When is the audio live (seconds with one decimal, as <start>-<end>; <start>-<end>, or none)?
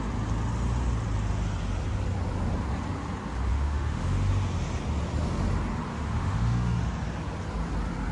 0.0-3.5; 4.3-5.9; 6.8-8.1